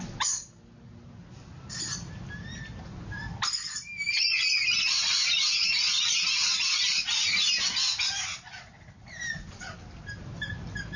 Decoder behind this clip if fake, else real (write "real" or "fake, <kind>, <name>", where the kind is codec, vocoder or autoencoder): real